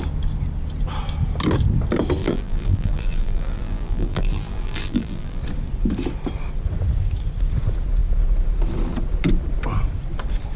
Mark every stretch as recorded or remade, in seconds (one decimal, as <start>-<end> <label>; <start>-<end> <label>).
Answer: 0.0-2.2 recorded; 2.2-5.4 remade; 5.4-10.6 recorded